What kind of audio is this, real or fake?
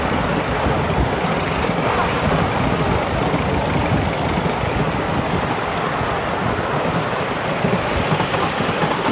real